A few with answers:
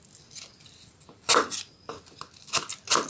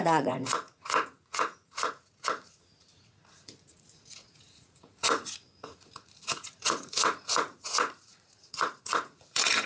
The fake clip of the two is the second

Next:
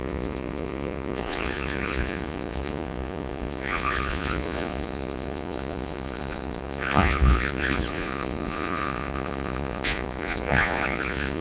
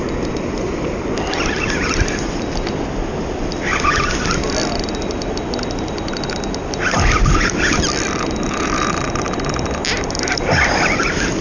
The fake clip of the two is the first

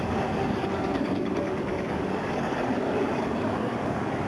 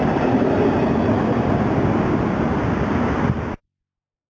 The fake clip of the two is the first